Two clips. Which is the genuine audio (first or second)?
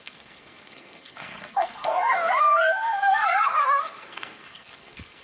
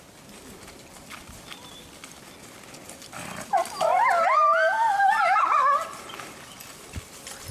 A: second